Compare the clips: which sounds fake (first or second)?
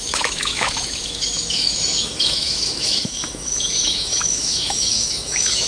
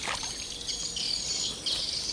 first